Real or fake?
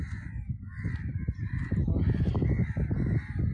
real